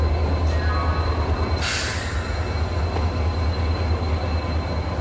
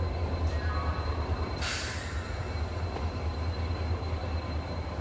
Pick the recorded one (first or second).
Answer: first